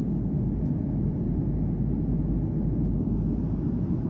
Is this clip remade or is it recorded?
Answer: recorded